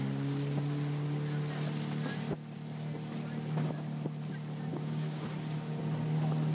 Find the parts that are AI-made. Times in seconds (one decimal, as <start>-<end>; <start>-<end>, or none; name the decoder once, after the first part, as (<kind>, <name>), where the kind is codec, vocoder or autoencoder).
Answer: 4.7-5.2 (codec, DAC)